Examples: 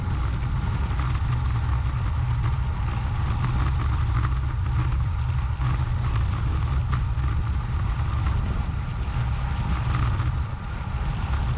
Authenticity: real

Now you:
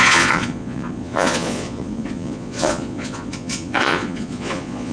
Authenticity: fake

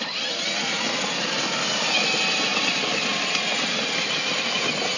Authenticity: real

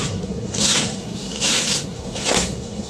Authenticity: fake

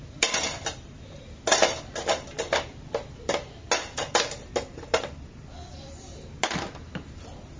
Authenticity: real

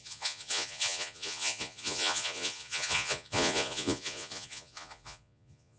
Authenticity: fake